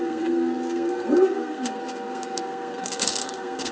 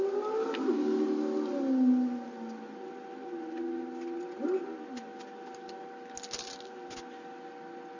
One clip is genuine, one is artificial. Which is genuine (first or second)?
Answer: second